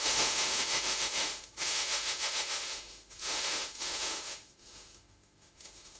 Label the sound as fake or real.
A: fake